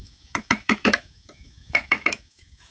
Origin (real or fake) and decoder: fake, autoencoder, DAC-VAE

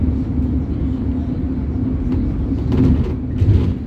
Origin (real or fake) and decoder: real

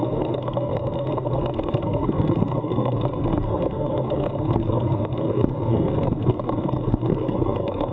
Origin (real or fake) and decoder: fake, codec, SNAC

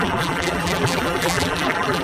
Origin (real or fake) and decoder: fake, vocoder, BigVGAN v2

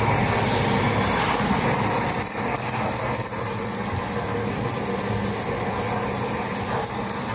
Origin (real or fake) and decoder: real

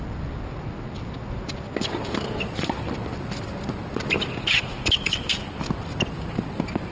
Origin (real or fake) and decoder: real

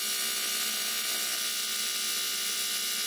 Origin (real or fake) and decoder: real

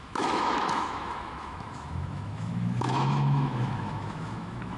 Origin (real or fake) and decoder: fake, autoencoder, DAC-VAE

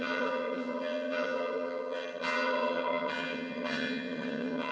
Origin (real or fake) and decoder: fake, vocoder, HiFi-GAN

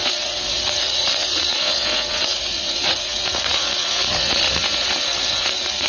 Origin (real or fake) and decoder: fake, vocoder, Vocos